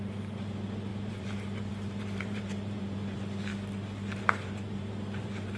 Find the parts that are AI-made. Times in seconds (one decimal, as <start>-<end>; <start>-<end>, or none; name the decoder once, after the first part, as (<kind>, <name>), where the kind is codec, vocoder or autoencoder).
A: 0.0-3.5 (vocoder, BigVGAN v2); 4.2-5.6